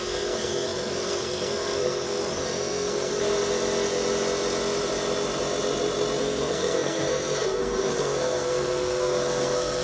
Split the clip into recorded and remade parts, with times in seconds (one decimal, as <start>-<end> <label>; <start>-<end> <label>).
0.0-3.1 remade; 3.1-6.2 recorded; 6.2-9.8 remade